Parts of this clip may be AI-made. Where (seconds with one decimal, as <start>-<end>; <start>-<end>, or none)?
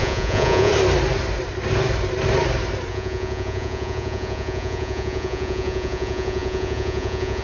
0.0-0.7; 2.9-7.4